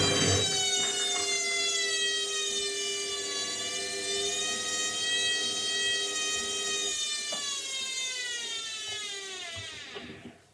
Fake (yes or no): no